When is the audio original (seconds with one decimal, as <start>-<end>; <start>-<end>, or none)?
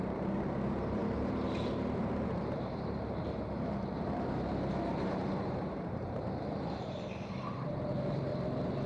8.3-8.9